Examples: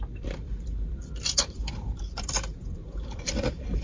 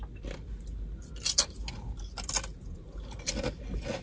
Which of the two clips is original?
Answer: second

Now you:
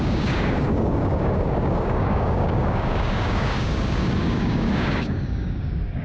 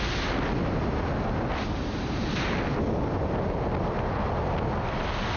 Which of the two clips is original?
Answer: second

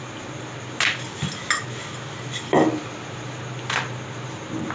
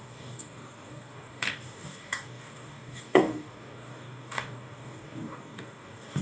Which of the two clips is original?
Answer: first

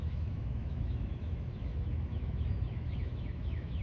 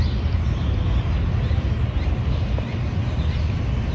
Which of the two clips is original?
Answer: second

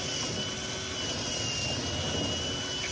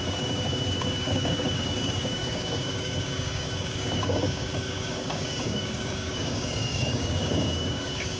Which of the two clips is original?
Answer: first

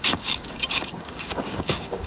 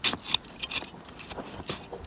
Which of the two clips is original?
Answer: second